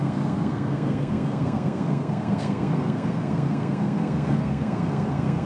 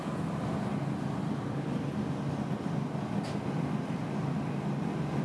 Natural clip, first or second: second